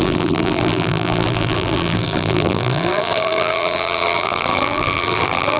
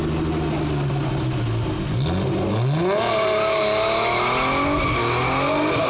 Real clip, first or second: second